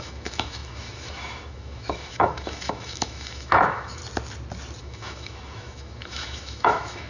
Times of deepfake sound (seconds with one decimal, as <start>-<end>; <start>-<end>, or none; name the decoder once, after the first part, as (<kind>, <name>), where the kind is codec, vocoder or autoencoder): 0.0-4.0 (autoencoder, DAC-VAE); 4.8-7.1